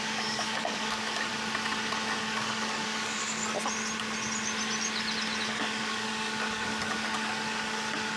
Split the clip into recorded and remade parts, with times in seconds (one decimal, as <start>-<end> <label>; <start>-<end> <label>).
0.0-1.3 remade; 1.3-2.2 recorded; 2.2-3.4 remade; 3.4-5.5 recorded; 5.5-8.2 remade